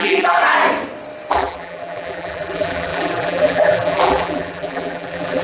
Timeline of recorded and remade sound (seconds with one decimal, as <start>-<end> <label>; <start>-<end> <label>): 0.0-0.4 remade; 0.4-1.3 recorded; 1.3-5.4 remade